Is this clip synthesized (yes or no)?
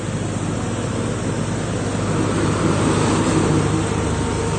no